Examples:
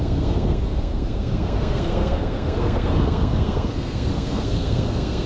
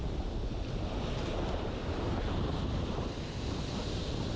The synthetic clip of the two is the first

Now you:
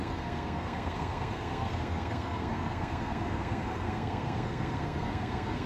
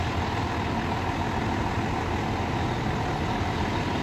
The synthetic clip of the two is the first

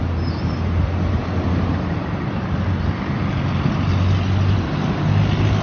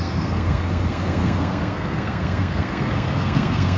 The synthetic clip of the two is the second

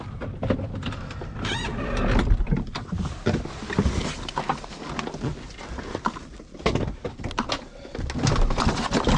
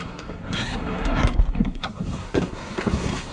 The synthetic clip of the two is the second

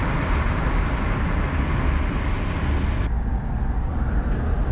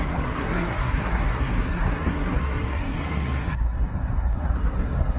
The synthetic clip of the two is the second